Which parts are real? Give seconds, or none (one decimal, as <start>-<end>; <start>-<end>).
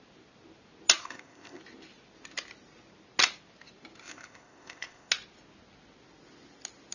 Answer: 0.0-1.0; 1.6-4.0; 5.1-6.9